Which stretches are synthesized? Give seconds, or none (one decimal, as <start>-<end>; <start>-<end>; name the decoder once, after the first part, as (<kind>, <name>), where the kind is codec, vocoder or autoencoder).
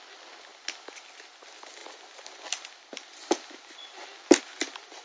0.5-1.1 (vocoder, BigVGAN v2)